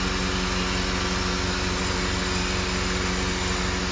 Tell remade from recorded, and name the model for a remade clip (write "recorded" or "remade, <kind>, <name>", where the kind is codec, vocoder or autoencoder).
recorded